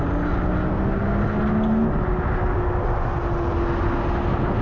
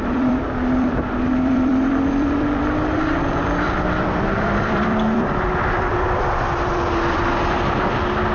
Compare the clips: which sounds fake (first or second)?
second